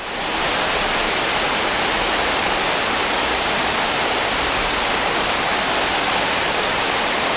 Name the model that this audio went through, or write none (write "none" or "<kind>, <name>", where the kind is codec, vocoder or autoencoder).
vocoder, BigVGAN v2